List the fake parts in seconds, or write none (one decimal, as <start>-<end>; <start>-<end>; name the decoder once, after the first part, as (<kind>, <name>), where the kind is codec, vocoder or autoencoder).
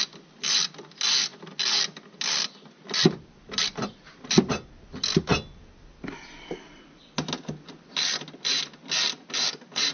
none